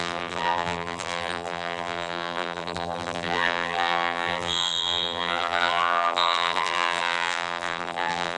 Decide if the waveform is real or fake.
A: fake